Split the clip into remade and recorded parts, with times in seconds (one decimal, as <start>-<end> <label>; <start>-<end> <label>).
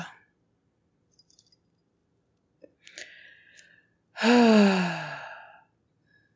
0.0-6.4 recorded